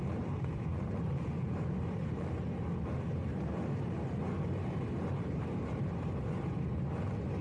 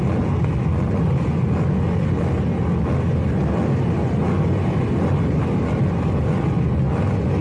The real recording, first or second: second